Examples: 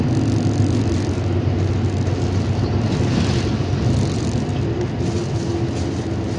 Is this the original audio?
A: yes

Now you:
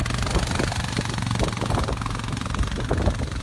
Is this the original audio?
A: yes